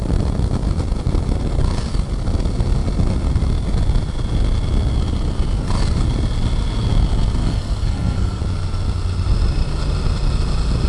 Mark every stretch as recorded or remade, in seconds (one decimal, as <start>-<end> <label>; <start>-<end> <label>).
0.0-7.4 recorded; 7.4-8.4 remade; 8.4-10.9 recorded

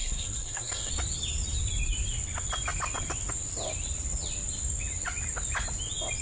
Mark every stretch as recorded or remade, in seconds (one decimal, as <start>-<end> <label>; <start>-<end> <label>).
0.0-0.9 remade; 0.9-6.2 recorded

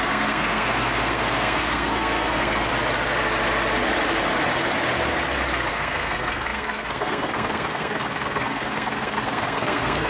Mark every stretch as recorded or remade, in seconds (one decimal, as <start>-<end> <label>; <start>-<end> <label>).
0.0-2.7 remade; 2.7-5.7 recorded; 5.7-10.1 remade

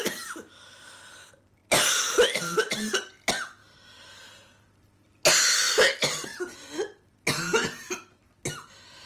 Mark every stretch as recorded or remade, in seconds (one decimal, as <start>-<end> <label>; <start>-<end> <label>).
0.0-9.1 recorded

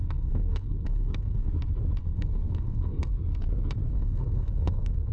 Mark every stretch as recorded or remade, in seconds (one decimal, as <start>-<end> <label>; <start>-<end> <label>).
0.0-1.5 remade; 1.5-2.0 recorded; 2.0-3.1 remade; 3.1-3.9 recorded; 3.9-5.1 remade

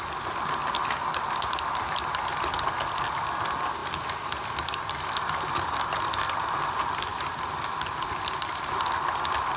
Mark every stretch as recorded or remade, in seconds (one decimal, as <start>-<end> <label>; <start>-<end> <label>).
0.0-9.6 recorded

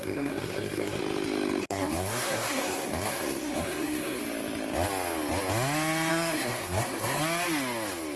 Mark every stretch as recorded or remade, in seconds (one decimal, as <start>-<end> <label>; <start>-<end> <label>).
0.0-1.0 remade; 1.0-1.6 recorded; 1.6-4.2 remade; 4.2-6.1 recorded; 6.1-7.2 remade; 7.2-8.2 recorded

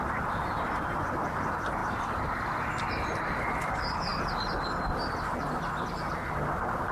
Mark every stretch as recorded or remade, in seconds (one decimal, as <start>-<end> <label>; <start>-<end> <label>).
0.0-6.9 recorded